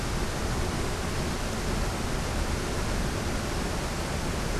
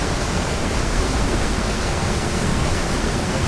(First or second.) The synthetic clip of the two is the second